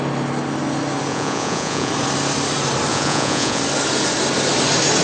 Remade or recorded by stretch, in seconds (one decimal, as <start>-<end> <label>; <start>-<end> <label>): 0.0-1.1 recorded; 1.1-1.9 remade; 1.9-2.9 recorded; 2.9-3.6 remade; 3.6-5.0 recorded